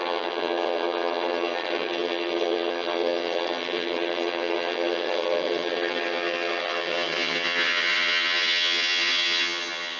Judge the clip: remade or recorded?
remade